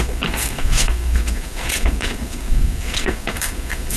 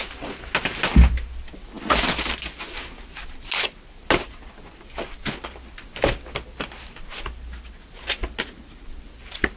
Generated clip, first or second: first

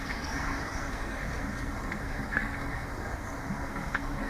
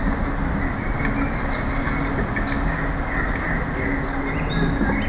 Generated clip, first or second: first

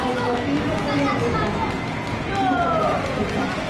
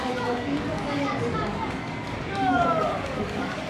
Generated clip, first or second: second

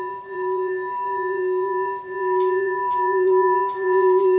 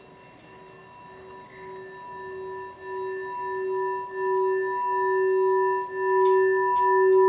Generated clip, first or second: first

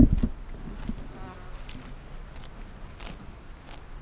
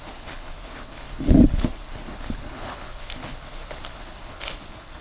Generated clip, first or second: second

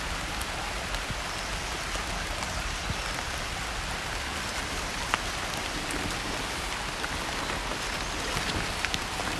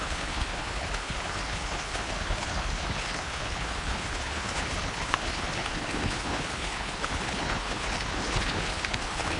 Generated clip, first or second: second